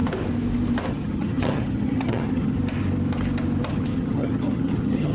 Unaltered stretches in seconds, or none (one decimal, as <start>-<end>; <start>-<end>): 0.0-0.9; 2.6-3.7